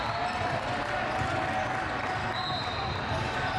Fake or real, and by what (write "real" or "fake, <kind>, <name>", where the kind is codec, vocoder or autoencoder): real